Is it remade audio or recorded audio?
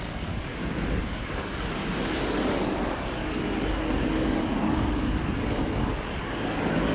remade